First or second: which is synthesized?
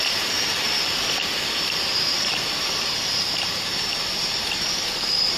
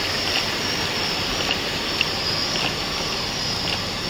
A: first